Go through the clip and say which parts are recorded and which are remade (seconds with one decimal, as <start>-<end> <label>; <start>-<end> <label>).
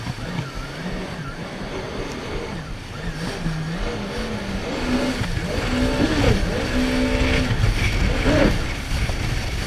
0.0-4.6 recorded; 4.6-5.2 remade; 5.2-9.7 recorded